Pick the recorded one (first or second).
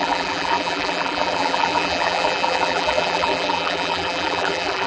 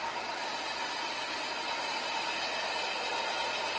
second